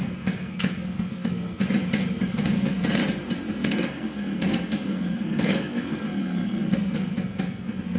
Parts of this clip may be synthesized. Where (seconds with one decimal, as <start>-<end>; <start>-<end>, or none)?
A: 0.0-1.6; 2.3-3.0; 3.5-8.0